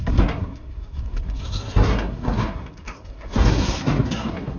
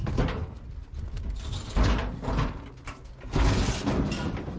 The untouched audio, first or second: second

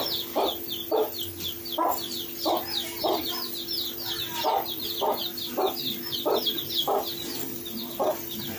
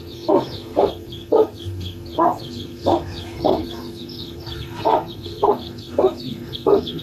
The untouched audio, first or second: first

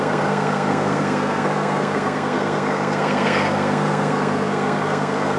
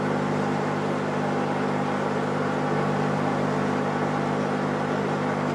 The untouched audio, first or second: second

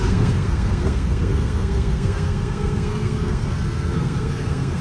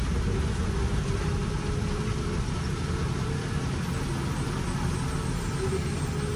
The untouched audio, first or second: second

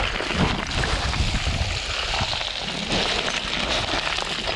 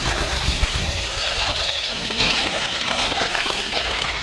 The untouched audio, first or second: first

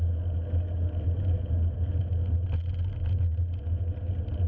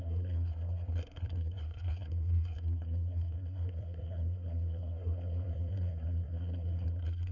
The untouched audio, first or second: first